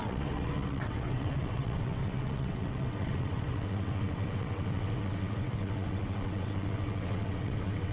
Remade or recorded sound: remade